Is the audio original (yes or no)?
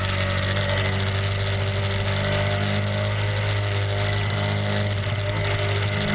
yes